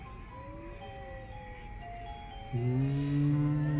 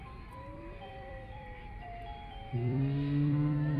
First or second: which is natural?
first